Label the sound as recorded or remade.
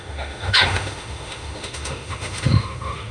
remade